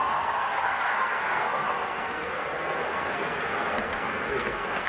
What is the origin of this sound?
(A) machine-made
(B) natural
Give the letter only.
A